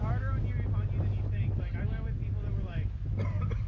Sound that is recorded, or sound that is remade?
recorded